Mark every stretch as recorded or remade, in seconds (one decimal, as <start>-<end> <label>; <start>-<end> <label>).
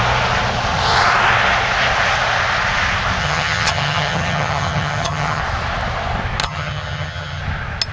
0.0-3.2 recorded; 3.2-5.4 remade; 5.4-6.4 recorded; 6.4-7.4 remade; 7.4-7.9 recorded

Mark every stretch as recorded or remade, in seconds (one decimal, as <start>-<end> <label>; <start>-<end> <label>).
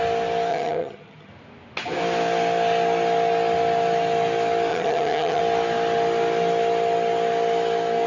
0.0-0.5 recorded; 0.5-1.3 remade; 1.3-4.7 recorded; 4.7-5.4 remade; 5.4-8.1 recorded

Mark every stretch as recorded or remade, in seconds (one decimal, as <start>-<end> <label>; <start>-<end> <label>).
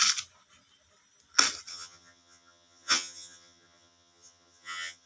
0.0-1.7 recorded; 1.7-5.1 remade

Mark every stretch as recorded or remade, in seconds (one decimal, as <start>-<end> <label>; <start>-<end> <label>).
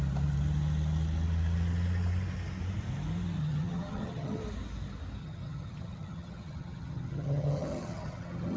0.0-3.4 recorded; 3.4-4.4 remade; 4.4-5.2 recorded; 5.2-8.6 remade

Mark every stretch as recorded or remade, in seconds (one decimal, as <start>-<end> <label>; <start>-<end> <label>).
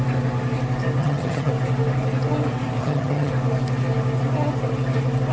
0.0-1.0 recorded; 1.0-1.5 remade; 1.5-2.8 recorded; 2.8-3.3 remade; 3.3-5.3 recorded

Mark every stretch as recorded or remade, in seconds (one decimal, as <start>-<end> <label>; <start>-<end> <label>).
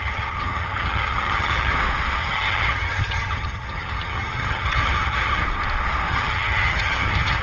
0.0-1.7 remade; 1.7-2.2 recorded; 2.2-5.4 remade; 5.4-6.1 recorded; 6.1-7.4 remade